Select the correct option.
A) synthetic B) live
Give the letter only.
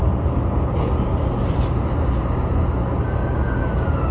B